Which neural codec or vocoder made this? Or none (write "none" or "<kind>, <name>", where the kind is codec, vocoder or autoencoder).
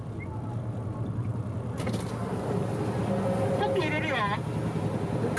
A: none